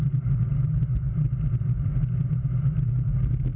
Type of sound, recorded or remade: recorded